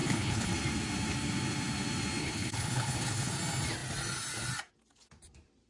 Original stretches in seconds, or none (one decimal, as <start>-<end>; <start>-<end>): 0.5-2.2; 3.3-5.7